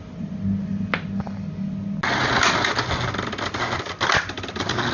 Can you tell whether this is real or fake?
real